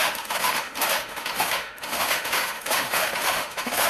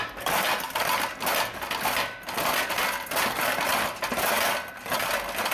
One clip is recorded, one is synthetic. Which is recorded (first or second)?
second